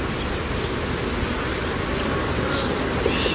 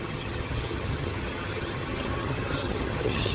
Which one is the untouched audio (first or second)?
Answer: first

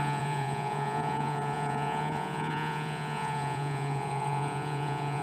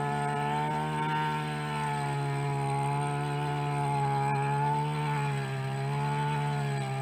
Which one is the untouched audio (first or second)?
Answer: second